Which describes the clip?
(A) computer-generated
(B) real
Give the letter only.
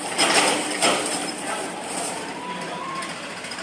A